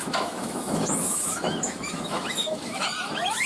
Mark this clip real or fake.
fake